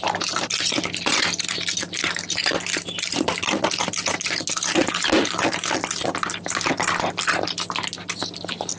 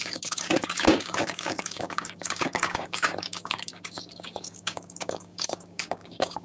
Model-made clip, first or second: second